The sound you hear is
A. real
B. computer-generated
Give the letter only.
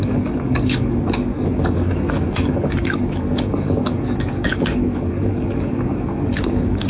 B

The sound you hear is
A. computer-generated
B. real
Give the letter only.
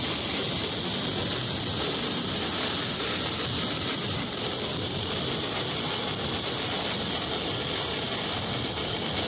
B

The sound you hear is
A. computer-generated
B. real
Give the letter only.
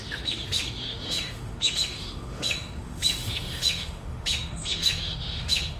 A